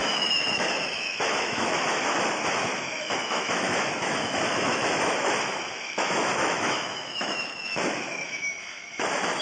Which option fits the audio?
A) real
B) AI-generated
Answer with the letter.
B